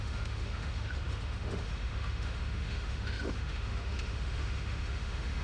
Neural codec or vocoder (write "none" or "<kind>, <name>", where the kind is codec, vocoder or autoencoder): autoencoder, DAC-VAE